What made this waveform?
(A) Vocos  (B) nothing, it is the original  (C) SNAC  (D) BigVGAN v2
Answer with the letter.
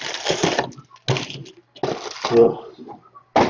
B